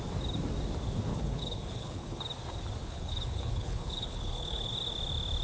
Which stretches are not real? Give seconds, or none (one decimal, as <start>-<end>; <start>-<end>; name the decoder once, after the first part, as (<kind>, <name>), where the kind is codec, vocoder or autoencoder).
1.1-2.2 (codec, HILCodec); 2.8-4.7